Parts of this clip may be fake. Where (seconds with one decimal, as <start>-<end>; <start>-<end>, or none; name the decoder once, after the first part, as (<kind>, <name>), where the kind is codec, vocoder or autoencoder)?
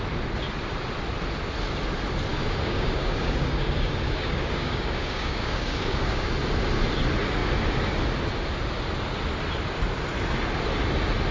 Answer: 2.3-6.3 (codec, DAC)